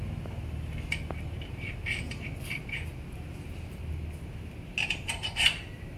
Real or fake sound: real